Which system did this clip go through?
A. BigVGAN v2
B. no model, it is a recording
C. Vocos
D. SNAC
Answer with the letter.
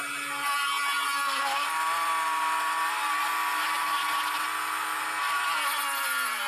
B